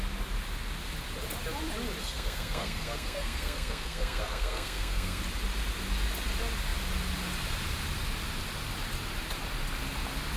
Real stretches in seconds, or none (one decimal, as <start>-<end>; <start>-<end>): 0.0-2.0; 5.2-10.4